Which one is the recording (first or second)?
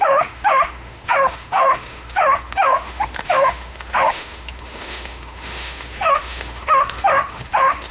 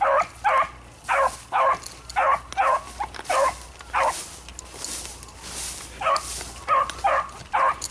second